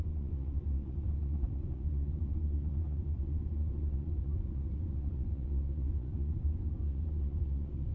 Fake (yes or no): yes